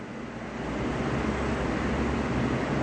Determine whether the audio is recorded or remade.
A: recorded